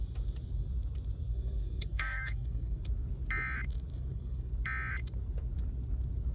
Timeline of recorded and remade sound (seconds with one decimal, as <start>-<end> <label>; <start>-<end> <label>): 0.0-1.2 recorded; 1.2-2.8 remade; 2.8-3.9 recorded; 3.9-4.5 remade; 4.5-6.3 recorded